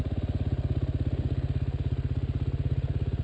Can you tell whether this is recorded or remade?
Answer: recorded